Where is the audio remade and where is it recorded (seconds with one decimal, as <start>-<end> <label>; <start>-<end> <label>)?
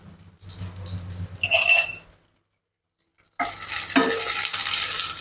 0.0-5.2 recorded